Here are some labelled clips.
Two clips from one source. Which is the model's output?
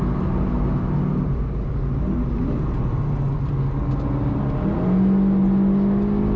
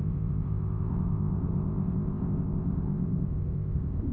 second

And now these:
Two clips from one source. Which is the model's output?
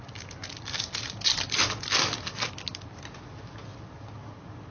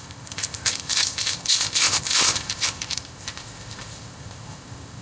second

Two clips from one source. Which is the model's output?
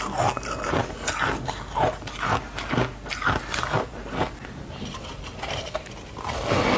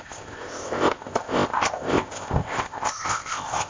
second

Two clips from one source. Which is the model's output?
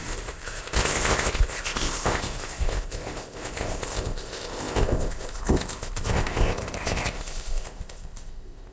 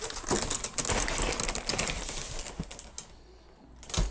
first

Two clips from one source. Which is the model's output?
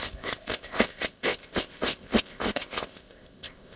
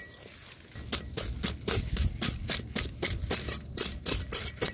first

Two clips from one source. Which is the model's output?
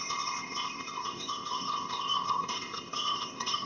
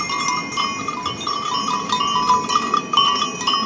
first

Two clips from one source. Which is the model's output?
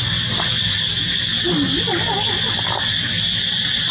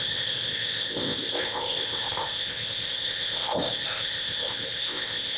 second